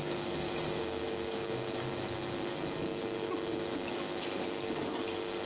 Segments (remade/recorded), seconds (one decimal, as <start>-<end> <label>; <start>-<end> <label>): 0.0-5.5 recorded